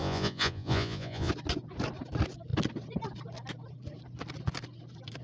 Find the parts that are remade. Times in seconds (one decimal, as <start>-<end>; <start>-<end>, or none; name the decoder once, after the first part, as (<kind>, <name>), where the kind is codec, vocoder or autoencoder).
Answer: 0.0-1.3 (vocoder, Vocos)